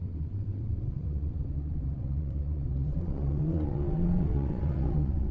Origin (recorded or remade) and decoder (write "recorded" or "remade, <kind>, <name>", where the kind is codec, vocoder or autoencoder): remade, vocoder, WaveNeXt